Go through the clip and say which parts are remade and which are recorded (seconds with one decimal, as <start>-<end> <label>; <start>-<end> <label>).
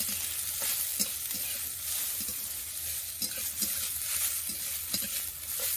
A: 0.0-5.8 recorded